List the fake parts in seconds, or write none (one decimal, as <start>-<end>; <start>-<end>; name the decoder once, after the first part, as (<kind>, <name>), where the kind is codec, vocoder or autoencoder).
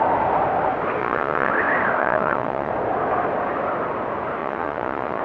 1.0-1.5 (vocoder, Vocos); 2.0-2.7; 4.4-5.2